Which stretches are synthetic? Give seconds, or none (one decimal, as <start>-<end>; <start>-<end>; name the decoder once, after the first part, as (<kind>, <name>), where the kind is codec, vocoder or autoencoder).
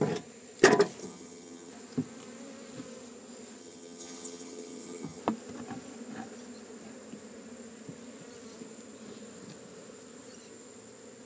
1.0-1.7 (vocoder, HiFi-GAN); 3.6-5.2